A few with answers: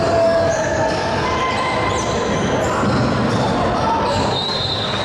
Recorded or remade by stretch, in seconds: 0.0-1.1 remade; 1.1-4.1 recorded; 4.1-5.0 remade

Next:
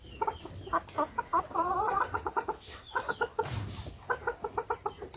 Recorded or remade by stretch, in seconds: 0.0-1.3 recorded; 1.3-3.1 remade; 3.1-5.2 recorded

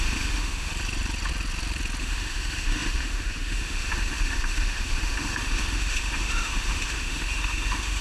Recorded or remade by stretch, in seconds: 0.0-0.7 remade; 0.7-2.0 recorded; 2.0-8.0 remade

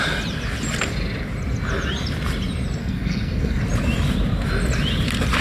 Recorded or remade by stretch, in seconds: 0.0-2.8 recorded; 2.8-3.6 remade; 3.6-5.4 recorded

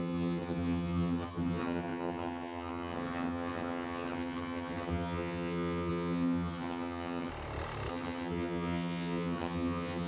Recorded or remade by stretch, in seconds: 0.0-7.3 remade; 7.3-7.9 recorded; 7.9-10.1 remade

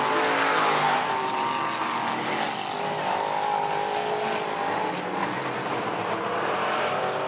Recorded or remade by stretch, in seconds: 0.0-5.2 recorded; 5.2-6.0 remade; 6.0-7.3 recorded

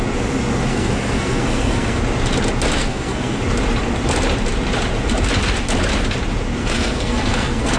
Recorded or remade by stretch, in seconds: 0.0-0.7 recorded; 0.7-2.0 remade; 2.0-2.8 recorded; 2.8-3.4 remade; 3.4-6.6 recorded; 6.6-7.8 remade

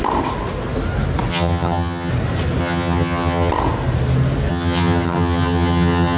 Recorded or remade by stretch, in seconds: 0.0-1.3 recorded; 1.3-2.1 remade; 2.1-2.6 recorded; 2.6-3.5 remade; 3.5-4.5 recorded; 4.5-6.2 remade